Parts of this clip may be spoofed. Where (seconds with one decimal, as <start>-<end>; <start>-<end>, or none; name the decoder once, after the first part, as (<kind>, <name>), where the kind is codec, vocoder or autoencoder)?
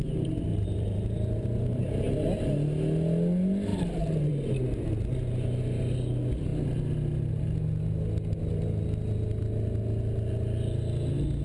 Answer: 0.5-1.8 (vocoder, BigVGAN v2); 3.7-4.3